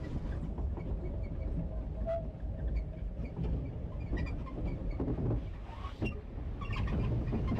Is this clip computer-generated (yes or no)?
no